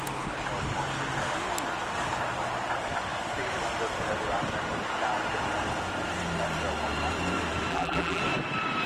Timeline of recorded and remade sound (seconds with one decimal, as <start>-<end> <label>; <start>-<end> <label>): 0.0-7.7 recorded; 7.7-8.2 remade; 8.2-8.9 recorded